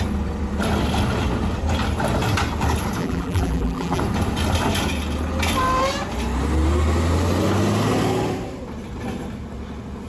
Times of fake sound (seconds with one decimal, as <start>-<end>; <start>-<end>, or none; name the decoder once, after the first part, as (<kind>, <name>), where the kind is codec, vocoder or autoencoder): 3.0-4.0 (vocoder, BigVGAN v2)